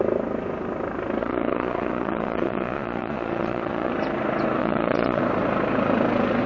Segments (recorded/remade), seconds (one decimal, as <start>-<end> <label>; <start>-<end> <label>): 0.0-1.2 recorded; 1.2-3.9 remade; 3.9-4.6 recorded; 4.6-5.2 remade; 5.2-6.5 recorded